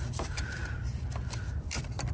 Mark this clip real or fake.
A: real